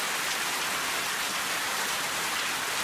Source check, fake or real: real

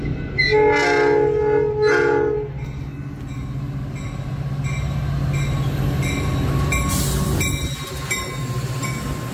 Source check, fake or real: real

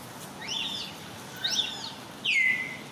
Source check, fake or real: real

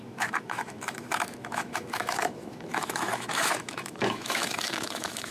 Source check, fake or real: fake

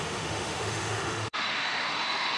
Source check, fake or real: fake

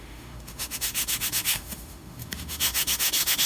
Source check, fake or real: fake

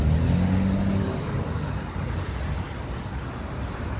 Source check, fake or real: real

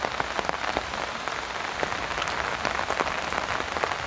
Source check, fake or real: real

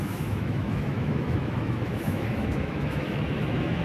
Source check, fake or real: fake